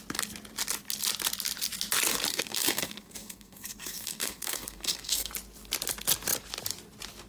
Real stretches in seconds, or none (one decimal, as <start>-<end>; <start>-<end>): 0.0-2.3; 5.3-7.3